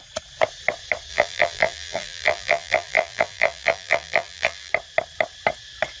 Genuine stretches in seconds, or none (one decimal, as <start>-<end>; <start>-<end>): 0.0-1.1; 4.7-6.0